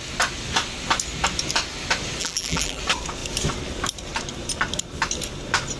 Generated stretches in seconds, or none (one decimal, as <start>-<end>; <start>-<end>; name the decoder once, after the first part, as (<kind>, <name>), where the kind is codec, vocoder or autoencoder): 2.2-2.8 (vocoder, BigVGAN v2)